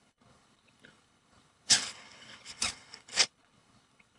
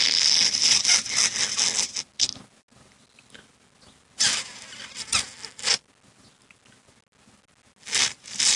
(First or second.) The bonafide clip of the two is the second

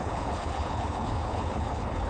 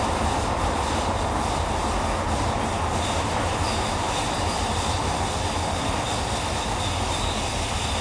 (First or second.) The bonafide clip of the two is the second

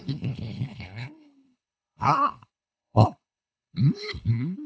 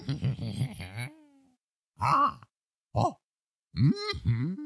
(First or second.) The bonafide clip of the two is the second